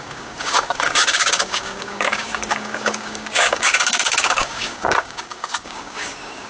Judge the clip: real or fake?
fake